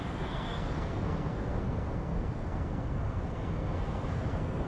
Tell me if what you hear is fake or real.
fake